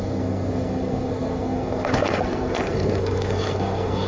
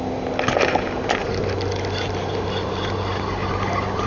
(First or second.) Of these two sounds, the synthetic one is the first